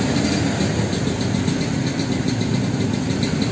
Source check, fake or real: real